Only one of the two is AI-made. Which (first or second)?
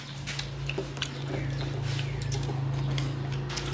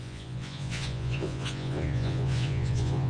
second